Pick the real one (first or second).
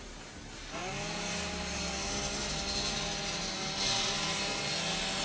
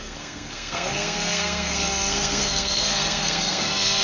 first